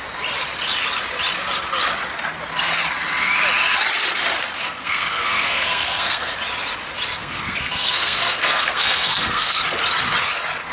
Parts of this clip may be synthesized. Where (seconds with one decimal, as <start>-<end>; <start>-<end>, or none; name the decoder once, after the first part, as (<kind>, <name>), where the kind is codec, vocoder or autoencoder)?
4.6-6.3 (codec, SNAC); 7.2-9.6